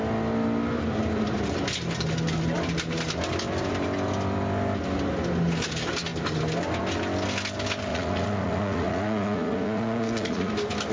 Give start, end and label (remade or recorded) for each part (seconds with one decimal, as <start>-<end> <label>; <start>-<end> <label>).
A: 0.0-7.9 recorded; 7.9-10.5 remade; 10.5-10.9 recorded